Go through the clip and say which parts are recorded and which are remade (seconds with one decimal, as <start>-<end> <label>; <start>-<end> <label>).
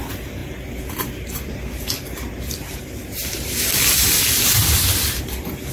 0.0-5.7 recorded